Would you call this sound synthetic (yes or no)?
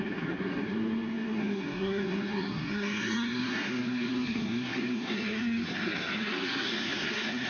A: yes